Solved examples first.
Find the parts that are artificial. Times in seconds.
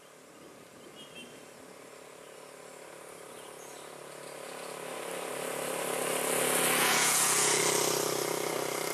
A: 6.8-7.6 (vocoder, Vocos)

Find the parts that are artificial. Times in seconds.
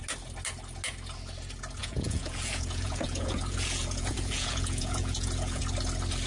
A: 1.8-5.6 (vocoder, Vocos)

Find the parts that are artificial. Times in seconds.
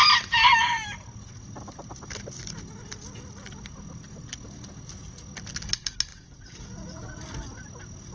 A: 6.1-7.2 (vocoder, Vocos)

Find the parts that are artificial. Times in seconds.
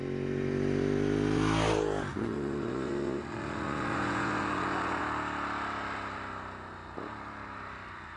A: 2.1-5.0 (vocoder, Vocos)